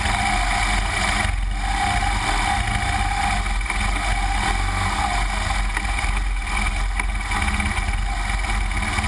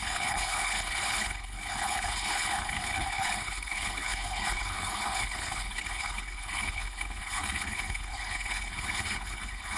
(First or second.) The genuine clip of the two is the first